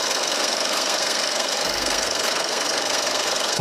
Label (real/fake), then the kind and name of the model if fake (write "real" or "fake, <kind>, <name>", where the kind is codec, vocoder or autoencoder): fake, codec, SNAC